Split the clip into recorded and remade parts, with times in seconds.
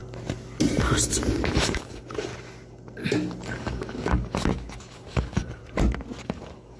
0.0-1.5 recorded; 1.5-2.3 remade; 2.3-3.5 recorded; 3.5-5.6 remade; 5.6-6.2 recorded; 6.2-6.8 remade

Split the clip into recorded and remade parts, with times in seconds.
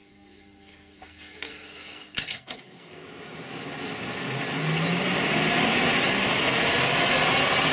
0.0-3.0 remade; 3.0-7.7 recorded